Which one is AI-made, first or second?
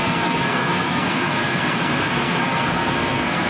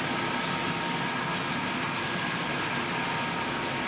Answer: first